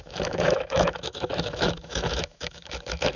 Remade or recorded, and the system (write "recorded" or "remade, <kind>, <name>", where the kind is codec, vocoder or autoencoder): remade, autoencoder, DAC-VAE